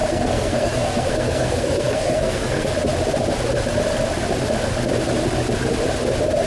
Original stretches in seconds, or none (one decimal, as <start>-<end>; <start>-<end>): 2.7-6.5